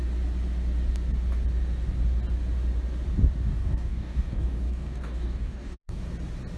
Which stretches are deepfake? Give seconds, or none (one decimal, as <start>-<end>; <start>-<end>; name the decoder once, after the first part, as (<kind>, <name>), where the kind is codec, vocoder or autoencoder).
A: 3.5-6.0 (codec, DAC)